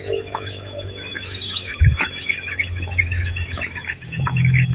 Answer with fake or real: fake